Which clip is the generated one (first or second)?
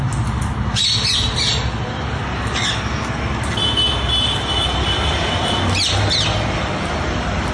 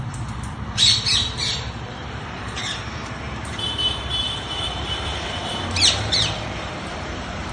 second